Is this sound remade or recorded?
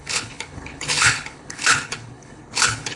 remade